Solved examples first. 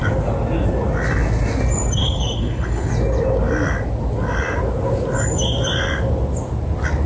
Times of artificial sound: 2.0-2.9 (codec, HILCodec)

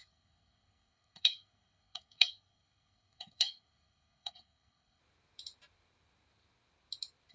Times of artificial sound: 0.0-5.0 (codec, SNAC)

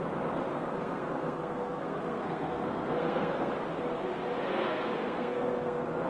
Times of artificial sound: 0.5-3.5 (codec, SNAC); 4.5-6.1